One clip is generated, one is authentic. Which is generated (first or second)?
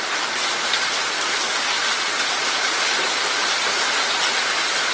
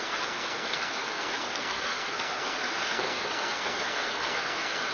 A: second